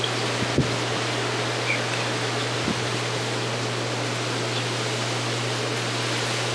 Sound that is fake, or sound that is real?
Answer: real